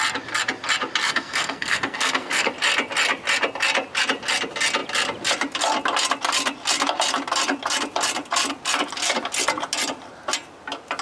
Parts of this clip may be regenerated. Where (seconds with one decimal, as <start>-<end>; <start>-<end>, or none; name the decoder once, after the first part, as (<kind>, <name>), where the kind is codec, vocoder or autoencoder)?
1.0-2.5 (codec, SNAC)